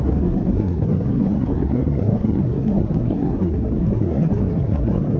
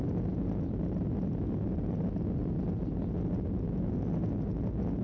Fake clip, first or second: first